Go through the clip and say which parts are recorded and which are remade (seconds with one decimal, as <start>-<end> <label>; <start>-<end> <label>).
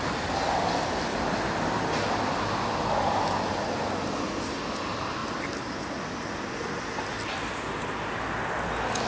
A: 0.0-9.1 recorded